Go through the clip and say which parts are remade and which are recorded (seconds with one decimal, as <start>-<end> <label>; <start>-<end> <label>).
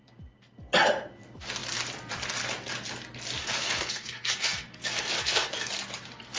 0.0-3.4 recorded; 3.4-5.7 remade; 5.7-6.4 recorded